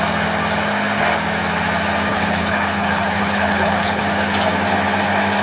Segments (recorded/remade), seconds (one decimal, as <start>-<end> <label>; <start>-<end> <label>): 0.0-2.1 recorded; 2.1-4.0 remade; 4.0-5.4 recorded